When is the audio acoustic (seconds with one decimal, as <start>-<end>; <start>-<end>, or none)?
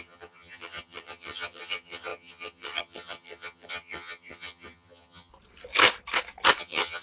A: 5.3-6.6